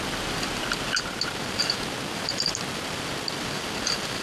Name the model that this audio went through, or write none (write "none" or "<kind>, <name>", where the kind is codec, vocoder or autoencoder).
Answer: none